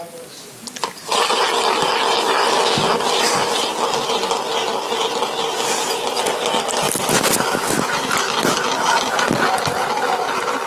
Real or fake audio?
real